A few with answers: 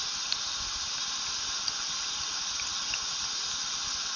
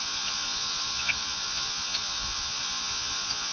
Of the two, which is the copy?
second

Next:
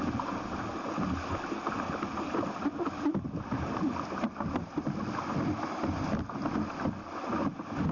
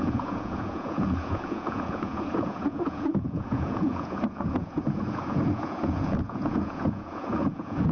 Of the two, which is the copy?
second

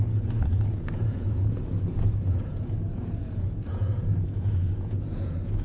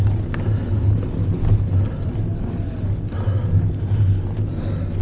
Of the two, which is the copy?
first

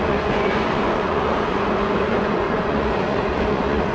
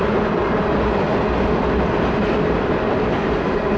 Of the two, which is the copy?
first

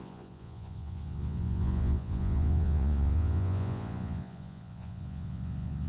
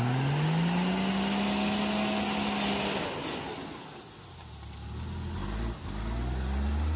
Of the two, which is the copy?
first